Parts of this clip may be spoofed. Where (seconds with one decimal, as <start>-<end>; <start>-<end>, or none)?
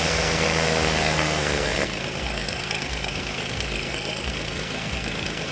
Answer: 0.0-5.5